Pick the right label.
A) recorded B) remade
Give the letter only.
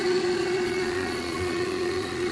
B